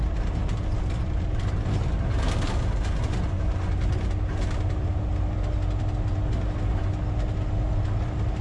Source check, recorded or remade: recorded